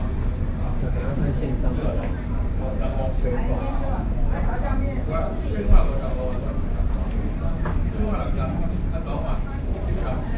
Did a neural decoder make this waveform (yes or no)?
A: yes